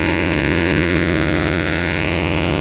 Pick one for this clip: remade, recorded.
remade